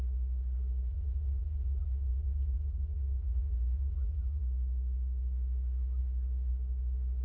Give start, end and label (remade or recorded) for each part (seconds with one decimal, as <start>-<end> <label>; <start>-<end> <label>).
0.0-0.9 recorded; 0.9-4.4 remade; 4.4-7.2 recorded